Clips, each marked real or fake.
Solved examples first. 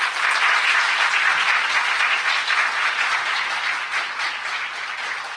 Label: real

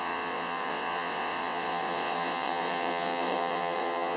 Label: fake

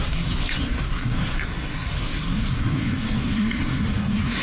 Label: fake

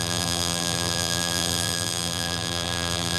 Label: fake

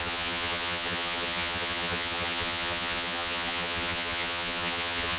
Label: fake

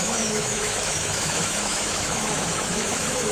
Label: fake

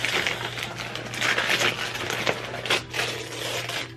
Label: real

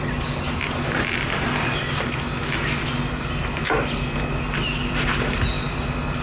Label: real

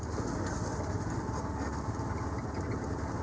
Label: real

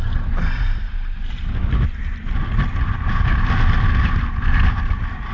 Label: real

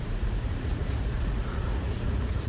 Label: fake